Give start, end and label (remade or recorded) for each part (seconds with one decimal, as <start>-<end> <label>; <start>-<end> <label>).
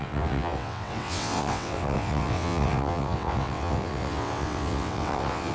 0.0-5.5 remade